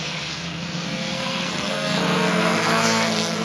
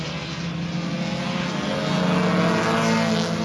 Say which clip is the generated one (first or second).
first